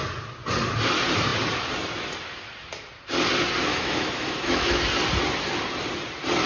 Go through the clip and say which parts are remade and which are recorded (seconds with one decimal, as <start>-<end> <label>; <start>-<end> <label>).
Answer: 0.0-3.7 recorded; 3.7-4.8 remade; 4.8-6.5 recorded